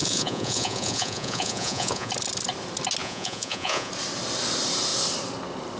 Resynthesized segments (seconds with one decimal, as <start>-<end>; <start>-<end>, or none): 0.0-2.1; 3.0-3.9